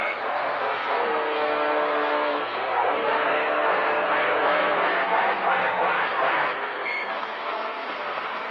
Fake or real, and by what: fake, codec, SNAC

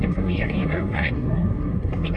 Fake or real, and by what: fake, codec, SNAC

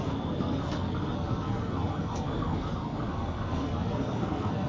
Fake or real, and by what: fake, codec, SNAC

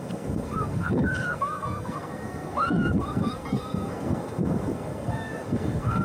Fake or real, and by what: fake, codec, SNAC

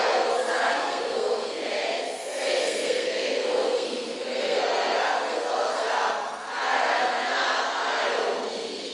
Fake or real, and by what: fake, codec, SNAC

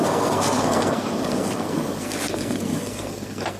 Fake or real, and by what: fake, codec, SNAC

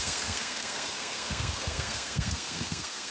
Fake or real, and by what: fake, codec, SNAC